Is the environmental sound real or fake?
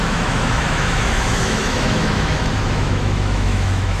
fake